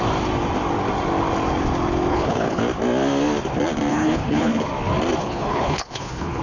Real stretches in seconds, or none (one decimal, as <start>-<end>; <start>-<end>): 0.0-2.1; 2.6-3.9; 4.5-5.2